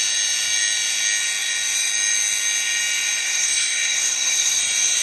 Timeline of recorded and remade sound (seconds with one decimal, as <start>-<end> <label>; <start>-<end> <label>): 0.0-3.2 recorded; 3.2-4.6 remade; 4.6-5.0 recorded